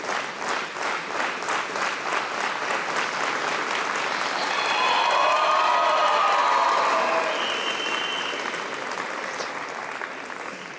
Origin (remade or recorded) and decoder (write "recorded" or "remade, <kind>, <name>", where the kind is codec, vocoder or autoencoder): recorded